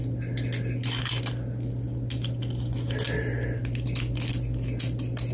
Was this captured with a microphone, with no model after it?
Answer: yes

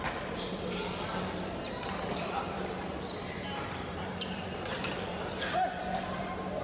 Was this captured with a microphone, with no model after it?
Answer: no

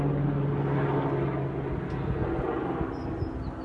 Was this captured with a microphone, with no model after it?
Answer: yes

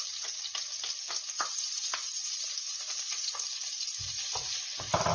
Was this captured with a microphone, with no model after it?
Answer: yes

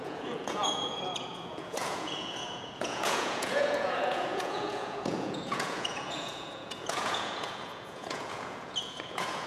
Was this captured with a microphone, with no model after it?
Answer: no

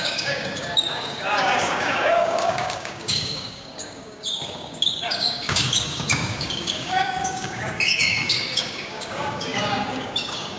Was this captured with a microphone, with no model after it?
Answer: no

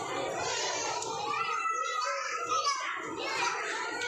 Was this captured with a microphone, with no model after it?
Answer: yes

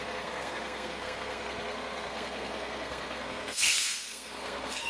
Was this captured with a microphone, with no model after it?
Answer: no